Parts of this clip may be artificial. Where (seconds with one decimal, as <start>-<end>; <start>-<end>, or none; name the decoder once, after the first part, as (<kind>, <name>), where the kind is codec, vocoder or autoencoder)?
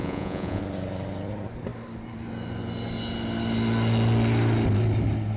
0.0-0.6 (vocoder, Vocos)